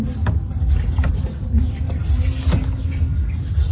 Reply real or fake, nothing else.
real